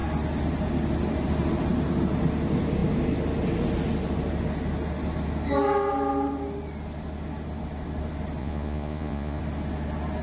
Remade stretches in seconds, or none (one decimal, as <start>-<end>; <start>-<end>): 8.4-9.4